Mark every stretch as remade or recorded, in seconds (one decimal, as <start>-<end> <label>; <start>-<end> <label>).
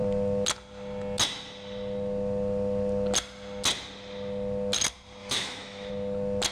0.0-5.2 recorded; 5.2-5.9 remade; 5.9-6.5 recorded